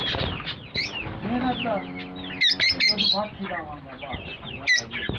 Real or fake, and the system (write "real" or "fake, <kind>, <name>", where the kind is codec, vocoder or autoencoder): real